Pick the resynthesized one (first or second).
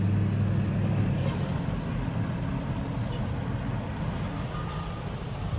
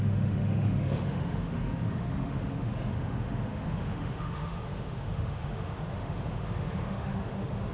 second